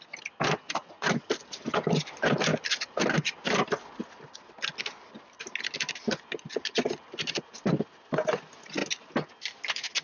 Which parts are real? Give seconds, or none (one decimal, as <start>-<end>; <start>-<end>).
0.0-10.0